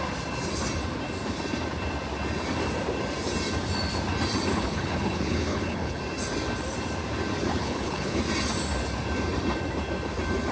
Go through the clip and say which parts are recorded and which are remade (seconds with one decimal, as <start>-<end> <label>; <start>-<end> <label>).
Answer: 0.0-4.5 recorded; 4.5-6.0 remade; 6.0-7.6 recorded; 7.6-8.2 remade; 8.2-10.5 recorded